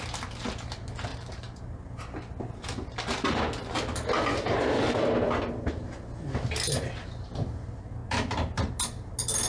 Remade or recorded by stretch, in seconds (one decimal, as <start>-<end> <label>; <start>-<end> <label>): 0.0-1.1 recorded; 1.1-1.6 remade; 1.6-8.0 recorded; 8.0-8.7 remade; 8.7-9.5 recorded